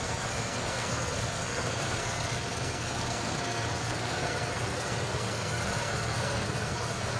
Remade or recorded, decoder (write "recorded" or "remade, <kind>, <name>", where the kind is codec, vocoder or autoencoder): remade, codec, SNAC